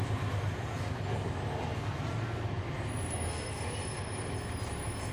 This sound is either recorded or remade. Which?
recorded